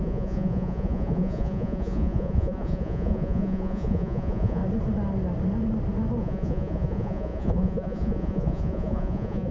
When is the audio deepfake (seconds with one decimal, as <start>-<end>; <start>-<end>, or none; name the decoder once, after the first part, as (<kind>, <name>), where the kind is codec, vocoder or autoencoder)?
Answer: 0.0-4.6 (vocoder, Vocos); 6.2-9.5